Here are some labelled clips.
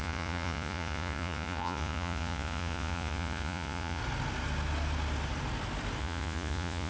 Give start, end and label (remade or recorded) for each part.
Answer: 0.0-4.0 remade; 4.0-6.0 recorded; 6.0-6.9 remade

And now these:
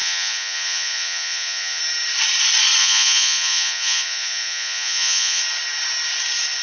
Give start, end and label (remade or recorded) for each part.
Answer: 0.0-1.8 remade; 1.8-2.8 recorded; 2.8-5.4 remade; 5.4-6.6 recorded

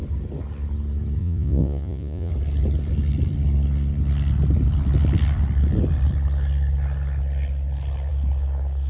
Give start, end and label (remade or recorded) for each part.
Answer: 0.0-1.2 recorded; 1.2-2.3 remade; 2.3-8.9 recorded

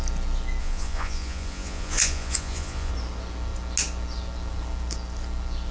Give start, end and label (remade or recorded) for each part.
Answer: 0.0-0.6 recorded; 0.6-2.9 remade; 2.9-5.7 recorded

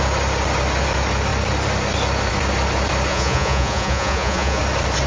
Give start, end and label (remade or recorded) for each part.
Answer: 0.0-3.1 recorded; 3.1-4.6 remade; 4.6-5.1 recorded

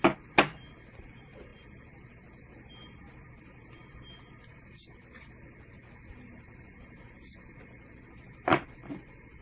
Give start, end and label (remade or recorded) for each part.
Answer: 0.0-9.4 recorded

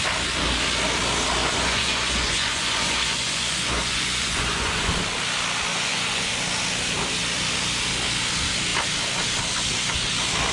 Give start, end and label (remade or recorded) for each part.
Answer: 0.0-1.4 recorded; 1.4-4.9 remade; 4.9-5.7 recorded; 5.7-6.3 remade; 6.3-10.5 recorded